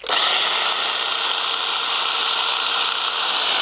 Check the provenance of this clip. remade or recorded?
recorded